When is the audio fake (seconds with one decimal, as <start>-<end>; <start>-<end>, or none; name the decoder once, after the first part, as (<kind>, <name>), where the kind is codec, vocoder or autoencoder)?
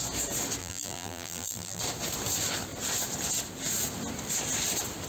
0.6-1.8 (vocoder, BigVGAN v2)